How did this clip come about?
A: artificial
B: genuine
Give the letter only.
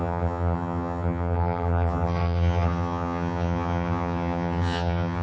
A